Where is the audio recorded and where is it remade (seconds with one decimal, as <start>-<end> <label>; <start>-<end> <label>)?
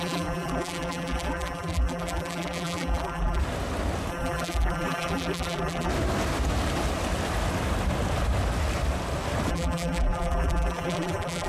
0.0-3.4 remade; 3.4-4.1 recorded; 4.1-5.9 remade; 5.9-9.5 recorded; 9.5-11.5 remade